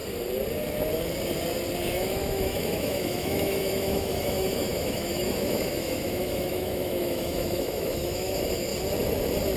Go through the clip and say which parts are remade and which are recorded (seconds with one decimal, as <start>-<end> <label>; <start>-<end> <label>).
0.0-1.9 recorded; 1.9-8.7 remade; 8.7-9.6 recorded